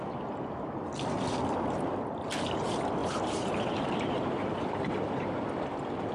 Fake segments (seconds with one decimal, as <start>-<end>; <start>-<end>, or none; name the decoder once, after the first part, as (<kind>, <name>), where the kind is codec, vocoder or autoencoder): 3.0-5.0 (vocoder, BigVGAN v2)

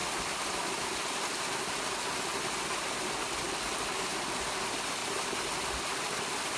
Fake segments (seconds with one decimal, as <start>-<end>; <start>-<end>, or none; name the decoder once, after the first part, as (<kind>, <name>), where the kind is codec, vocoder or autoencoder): 0.0-1.4 (vocoder, BigVGAN v2)

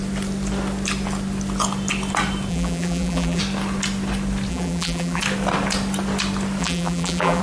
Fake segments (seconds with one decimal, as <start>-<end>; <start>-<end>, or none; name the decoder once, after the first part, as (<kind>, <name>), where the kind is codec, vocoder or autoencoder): 2.5-3.4 (vocoder, BigVGAN v2); 4.5-5.2; 6.6-7.4

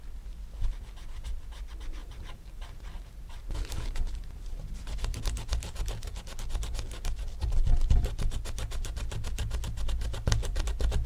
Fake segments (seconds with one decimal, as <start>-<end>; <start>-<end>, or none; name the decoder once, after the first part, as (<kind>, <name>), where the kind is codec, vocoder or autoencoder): 2.0-5.2 (vocoder, BigVGAN v2)

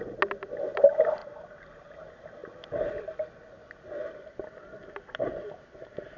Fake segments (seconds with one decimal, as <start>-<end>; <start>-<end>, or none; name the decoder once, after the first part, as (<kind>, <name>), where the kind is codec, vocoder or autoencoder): 1.2-1.7 (vocoder, BigVGAN v2); 2.4-3.4; 4.0-5.3